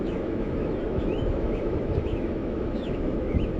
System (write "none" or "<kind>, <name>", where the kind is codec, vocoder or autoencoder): autoencoder, DAC-VAE